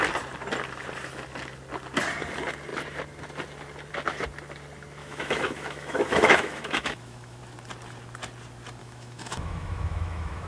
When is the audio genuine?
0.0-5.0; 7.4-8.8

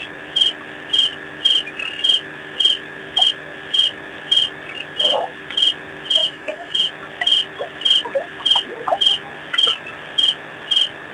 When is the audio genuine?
0.0-6.2; 6.9-11.1

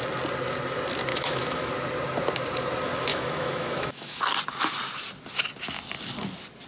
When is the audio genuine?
0.0-1.1; 1.7-3.1; 4.2-6.7

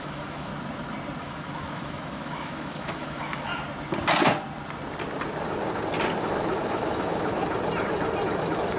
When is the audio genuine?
0.5-1.2; 3.5-6.2; 7.4-8.4

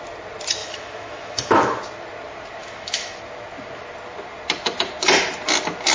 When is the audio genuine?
0.0-0.6; 1.8-2.6; 3.2-5.9

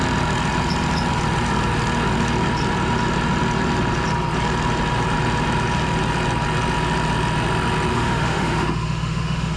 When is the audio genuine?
0.0-7.9

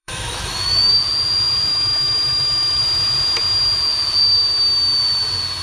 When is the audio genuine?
0.9-1.7; 2.8-5.6